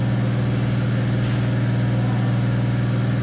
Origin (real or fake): real